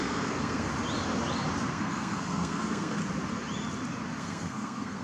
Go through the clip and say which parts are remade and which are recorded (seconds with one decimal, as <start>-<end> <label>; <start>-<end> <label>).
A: 0.0-0.7 remade; 0.7-1.7 recorded; 1.7-3.0 remade; 3.0-4.2 recorded; 4.2-5.0 remade